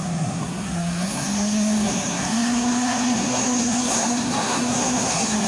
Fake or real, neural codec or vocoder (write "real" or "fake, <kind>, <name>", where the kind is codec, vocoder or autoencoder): fake, codec, SNAC